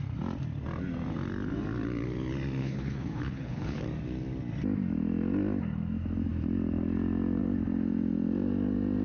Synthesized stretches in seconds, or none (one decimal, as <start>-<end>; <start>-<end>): 2.6-3.8